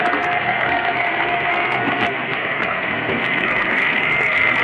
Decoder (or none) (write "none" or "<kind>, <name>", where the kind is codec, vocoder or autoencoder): codec, SNAC